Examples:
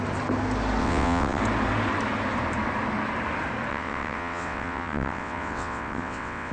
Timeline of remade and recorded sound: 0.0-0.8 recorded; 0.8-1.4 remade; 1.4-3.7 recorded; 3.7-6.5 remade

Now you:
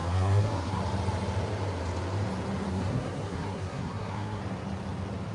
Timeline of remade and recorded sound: 0.0-0.8 remade; 0.8-2.7 recorded; 2.7-4.4 remade; 4.4-5.3 recorded

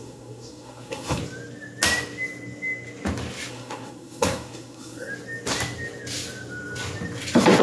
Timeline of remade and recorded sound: 0.0-1.2 remade; 1.2-3.5 recorded; 3.5-5.1 remade; 5.1-7.6 recorded

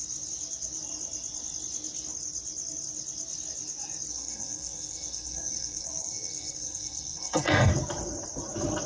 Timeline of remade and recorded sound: 0.0-4.1 recorded; 4.1-7.7 remade; 7.7-8.9 recorded